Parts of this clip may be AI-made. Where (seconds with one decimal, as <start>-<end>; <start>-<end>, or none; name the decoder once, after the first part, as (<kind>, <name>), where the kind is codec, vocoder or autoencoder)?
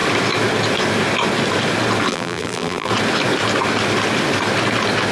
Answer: 2.1-2.9 (vocoder, BigVGAN v2)